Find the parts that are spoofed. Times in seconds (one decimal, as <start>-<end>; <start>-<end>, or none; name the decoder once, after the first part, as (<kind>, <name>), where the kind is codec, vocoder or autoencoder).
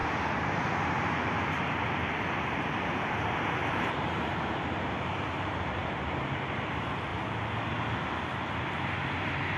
0.0-7.1 (vocoder, BigVGAN v2)